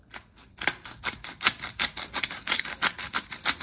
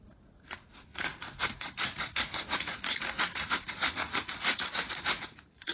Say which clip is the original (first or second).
first